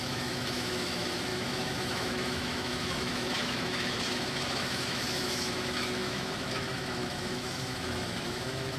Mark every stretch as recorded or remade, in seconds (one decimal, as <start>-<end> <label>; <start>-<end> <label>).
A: 0.0-8.8 remade